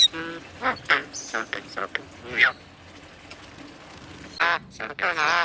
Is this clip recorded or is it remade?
recorded